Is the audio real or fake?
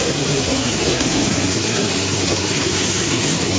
fake